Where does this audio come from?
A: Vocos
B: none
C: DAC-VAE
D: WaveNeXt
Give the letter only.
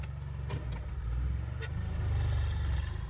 B